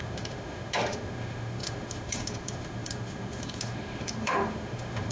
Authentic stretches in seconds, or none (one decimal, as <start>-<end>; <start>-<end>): none